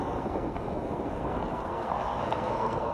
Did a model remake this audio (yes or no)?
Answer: yes